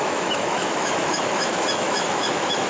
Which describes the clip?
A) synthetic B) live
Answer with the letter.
A